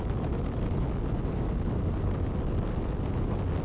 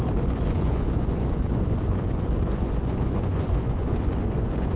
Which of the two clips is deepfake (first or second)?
second